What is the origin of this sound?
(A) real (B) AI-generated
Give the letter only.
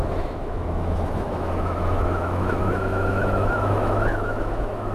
B